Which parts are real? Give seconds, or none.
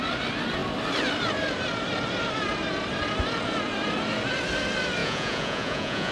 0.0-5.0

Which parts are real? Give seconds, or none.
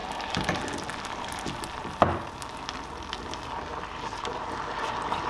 0.0-3.7; 4.3-5.3